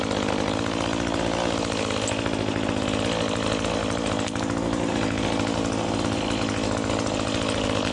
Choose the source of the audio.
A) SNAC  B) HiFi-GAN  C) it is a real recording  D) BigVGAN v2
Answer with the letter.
C